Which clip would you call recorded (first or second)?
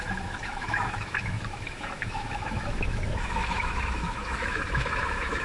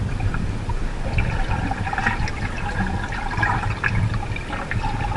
second